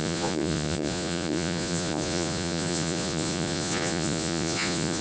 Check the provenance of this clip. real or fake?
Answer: fake